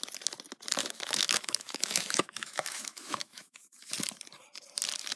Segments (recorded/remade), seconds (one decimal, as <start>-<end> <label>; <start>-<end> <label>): 0.0-0.8 recorded; 0.8-3.9 remade; 3.9-5.2 recorded